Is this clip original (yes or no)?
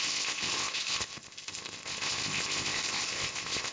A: no